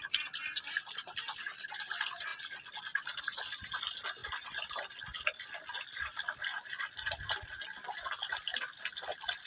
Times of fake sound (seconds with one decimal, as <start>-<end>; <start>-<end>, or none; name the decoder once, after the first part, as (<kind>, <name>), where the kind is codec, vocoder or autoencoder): 4.2-5.0 (vocoder, BigVGAN v2)